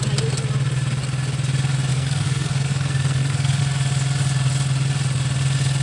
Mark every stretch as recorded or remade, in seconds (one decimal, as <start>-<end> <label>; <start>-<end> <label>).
0.0-1.9 recorded; 1.9-3.6 remade; 3.6-5.8 recorded

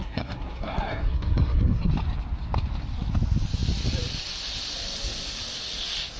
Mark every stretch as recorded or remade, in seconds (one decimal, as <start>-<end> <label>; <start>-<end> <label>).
0.0-1.9 remade; 1.9-6.2 recorded

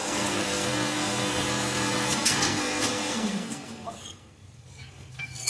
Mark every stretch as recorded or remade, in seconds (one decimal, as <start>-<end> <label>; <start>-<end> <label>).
0.0-5.5 remade

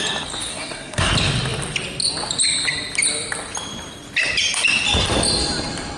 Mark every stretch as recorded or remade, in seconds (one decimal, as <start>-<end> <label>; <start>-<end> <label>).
0.0-0.5 recorded; 0.5-1.1 remade; 1.1-6.0 recorded

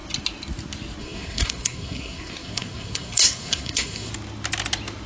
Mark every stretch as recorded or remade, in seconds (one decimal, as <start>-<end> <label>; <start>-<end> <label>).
0.0-1.0 recorded; 1.0-4.1 remade; 4.1-5.1 recorded